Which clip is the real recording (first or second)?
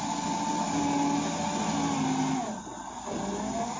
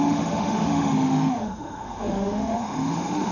first